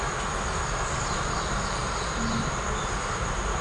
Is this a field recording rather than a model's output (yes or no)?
yes